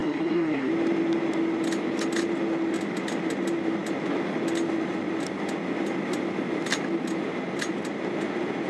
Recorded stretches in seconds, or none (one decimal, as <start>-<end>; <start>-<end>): 0.7-8.7